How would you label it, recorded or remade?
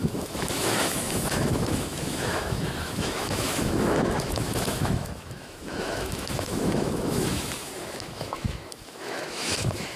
remade